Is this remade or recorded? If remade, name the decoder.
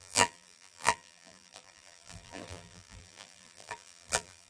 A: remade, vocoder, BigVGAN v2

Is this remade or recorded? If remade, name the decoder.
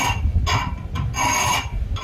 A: recorded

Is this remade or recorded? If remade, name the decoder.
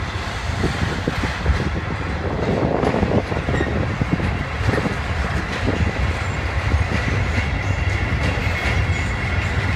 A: recorded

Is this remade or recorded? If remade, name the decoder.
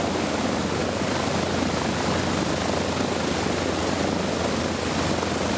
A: recorded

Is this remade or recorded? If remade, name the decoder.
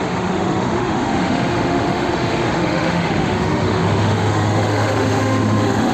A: remade, autoencoder, DAC-VAE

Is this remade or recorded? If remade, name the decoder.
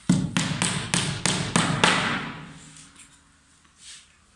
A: recorded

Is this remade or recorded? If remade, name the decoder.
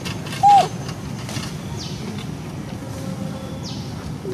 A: recorded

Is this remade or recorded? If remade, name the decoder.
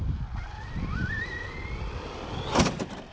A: recorded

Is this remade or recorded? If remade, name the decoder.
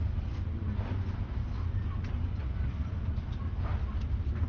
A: recorded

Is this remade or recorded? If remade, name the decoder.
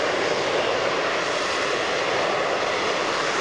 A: recorded